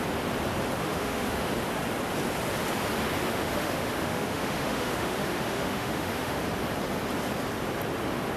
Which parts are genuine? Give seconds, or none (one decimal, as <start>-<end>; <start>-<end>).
0.0-0.8; 1.5-3.2; 6.4-8.4

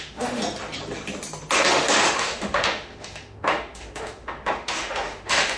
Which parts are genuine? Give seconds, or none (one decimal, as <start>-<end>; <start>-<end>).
0.4-1.7

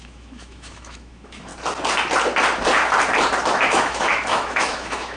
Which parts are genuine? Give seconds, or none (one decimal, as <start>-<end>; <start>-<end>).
1.5-3.5

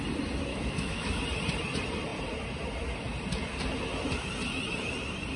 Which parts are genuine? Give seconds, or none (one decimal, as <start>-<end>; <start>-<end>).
0.0-0.5; 1.2-5.4

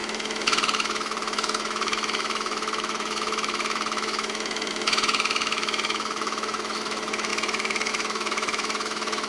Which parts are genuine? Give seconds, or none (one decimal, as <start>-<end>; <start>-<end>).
none